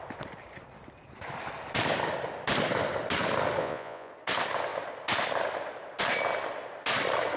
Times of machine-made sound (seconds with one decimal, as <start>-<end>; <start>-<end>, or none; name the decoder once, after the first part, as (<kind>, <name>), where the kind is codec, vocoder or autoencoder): 3.6-4.1 (vocoder, Vocos)